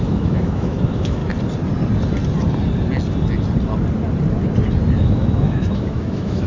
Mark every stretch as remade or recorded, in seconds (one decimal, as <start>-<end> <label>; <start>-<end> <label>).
0.0-1.2 remade; 1.2-5.0 recorded; 5.0-6.5 remade